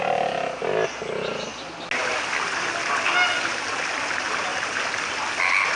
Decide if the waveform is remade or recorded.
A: recorded